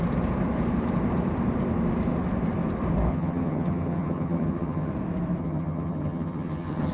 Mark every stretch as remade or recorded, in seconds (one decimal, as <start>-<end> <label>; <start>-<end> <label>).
0.0-3.1 recorded; 3.1-4.9 remade; 4.9-5.4 recorded; 5.4-6.9 remade